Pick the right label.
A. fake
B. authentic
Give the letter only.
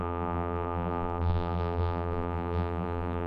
A